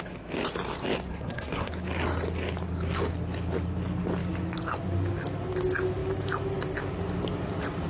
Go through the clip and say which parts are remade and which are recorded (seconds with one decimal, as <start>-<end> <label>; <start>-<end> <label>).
0.0-1.1 recorded; 1.1-1.7 remade; 1.7-7.9 recorded